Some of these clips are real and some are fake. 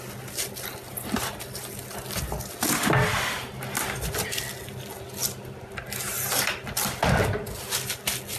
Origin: real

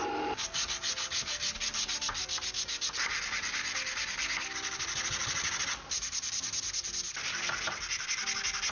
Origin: real